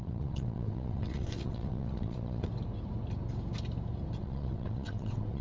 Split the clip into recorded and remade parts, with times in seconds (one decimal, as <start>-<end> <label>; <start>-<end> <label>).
0.0-2.5 remade; 2.5-4.2 recorded; 4.2-5.4 remade